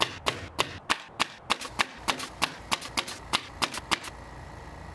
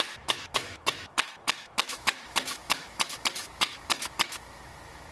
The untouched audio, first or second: first